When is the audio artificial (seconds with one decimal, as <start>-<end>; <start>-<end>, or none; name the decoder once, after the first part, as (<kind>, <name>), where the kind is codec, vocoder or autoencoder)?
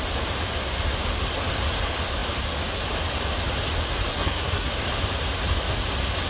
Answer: 4.1-4.7 (codec, SNAC)